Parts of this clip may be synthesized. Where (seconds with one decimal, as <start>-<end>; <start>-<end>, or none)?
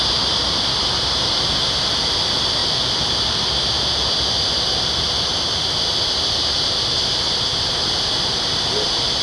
2.6-6.1; 7.5-9.2